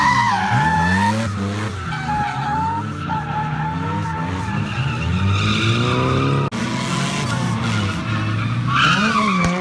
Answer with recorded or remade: recorded